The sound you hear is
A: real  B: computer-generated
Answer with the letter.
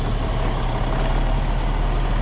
A